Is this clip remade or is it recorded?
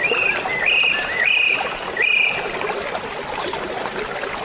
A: recorded